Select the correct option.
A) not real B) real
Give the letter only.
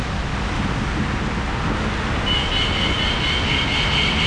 B